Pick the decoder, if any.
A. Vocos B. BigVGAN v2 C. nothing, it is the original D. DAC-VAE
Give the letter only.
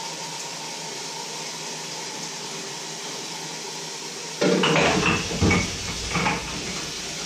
C